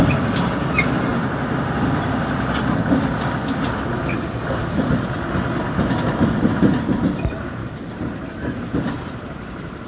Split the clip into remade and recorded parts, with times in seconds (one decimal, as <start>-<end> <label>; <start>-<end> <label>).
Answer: 0.0-7.6 recorded; 7.6-9.9 remade

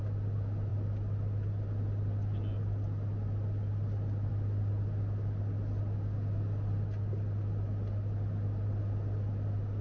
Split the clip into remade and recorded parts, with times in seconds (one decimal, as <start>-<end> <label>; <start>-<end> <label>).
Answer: 0.0-9.8 recorded